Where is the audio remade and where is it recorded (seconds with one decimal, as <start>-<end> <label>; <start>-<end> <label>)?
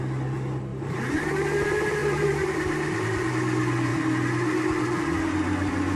0.0-0.7 recorded; 0.7-1.3 remade; 1.3-2.0 recorded; 2.0-3.3 remade; 3.3-6.0 recorded